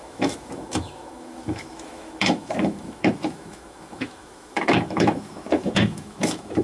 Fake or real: fake